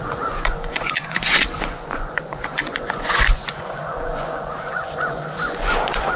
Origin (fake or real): fake